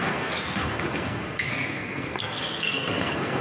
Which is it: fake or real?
fake